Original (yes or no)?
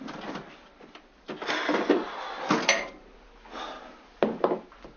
yes